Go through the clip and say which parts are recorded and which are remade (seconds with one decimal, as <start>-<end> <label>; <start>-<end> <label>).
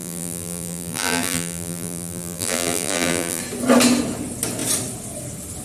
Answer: 0.0-3.4 remade; 3.4-5.6 recorded